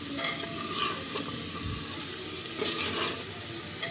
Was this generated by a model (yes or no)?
no